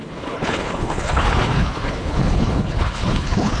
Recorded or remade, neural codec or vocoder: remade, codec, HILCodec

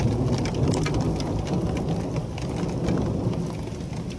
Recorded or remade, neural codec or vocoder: recorded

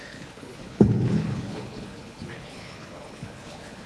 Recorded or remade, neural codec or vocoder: remade, codec, HILCodec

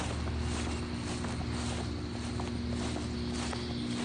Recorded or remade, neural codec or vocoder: recorded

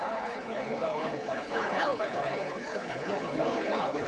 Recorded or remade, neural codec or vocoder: remade, codec, HILCodec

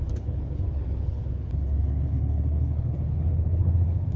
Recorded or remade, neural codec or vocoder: remade, codec, HILCodec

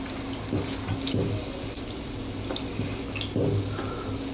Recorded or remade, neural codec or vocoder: recorded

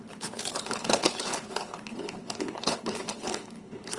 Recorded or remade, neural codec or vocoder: remade, codec, HILCodec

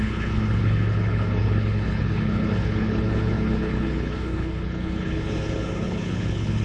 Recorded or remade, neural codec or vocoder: remade, codec, HILCodec